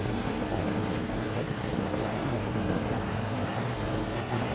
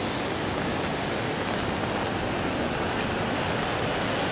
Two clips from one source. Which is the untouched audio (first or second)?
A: second